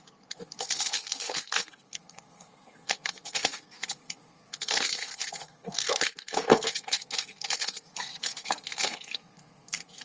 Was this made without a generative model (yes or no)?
no